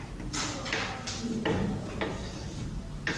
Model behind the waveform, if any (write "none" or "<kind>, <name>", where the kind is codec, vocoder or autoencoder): none